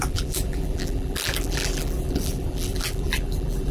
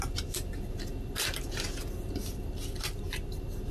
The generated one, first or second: first